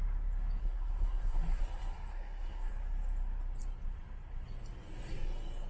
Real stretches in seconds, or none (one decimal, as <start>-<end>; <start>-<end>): 0.0-0.6; 1.6-2.1; 2.7-5.7